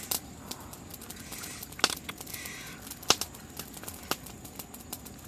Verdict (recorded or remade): recorded